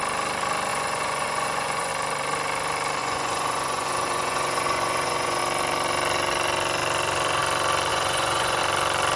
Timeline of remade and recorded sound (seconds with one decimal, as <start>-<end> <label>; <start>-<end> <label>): 0.0-0.7 recorded; 0.7-1.9 remade; 1.9-3.0 recorded; 3.0-5.4 remade; 5.4-7.9 recorded; 7.9-8.6 remade; 8.6-9.2 recorded